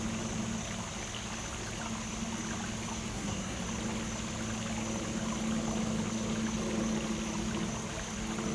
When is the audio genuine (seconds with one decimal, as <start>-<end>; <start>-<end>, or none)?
0.0-3.1; 3.6-8.5